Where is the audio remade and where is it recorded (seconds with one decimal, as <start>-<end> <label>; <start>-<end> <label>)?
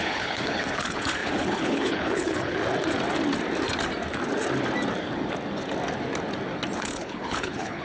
0.0-2.6 remade; 2.6-6.8 recorded; 6.8-7.8 remade